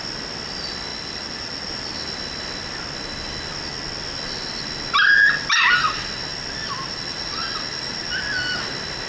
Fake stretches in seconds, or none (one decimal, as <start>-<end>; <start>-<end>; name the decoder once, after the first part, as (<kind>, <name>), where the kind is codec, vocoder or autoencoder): 0.9-1.7 (vocoder, BigVGAN v2); 6.3-8.2